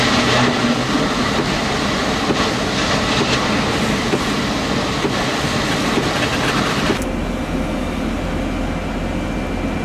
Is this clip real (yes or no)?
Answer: yes